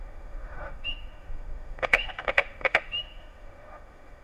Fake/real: fake